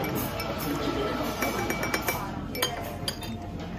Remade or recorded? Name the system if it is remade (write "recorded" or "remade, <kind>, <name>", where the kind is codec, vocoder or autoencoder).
recorded